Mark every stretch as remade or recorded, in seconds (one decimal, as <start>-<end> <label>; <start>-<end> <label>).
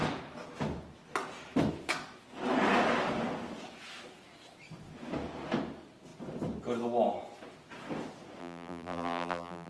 0.0-8.4 recorded; 8.4-9.7 remade